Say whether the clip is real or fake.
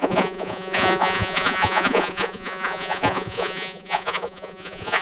fake